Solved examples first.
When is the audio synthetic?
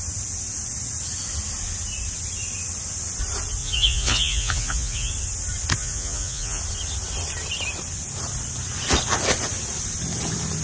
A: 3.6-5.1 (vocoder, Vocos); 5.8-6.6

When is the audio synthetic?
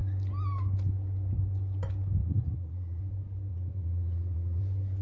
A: 2.2-3.0 (vocoder, Vocos); 3.5-4.6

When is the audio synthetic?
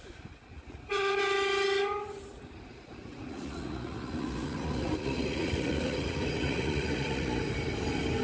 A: 0.5-1.2 (vocoder, Vocos); 2.7-7.4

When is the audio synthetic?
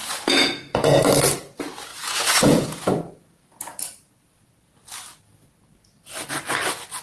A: 0.0-1.0 (vocoder, Vocos); 1.9-3.8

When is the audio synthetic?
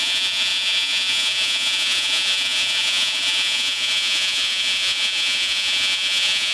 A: 0.0-6.5 (vocoder, Vocos)